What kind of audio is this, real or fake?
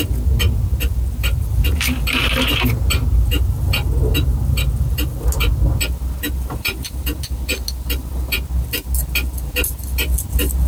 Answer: real